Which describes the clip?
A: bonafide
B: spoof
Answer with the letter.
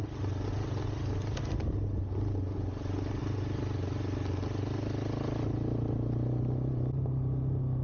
A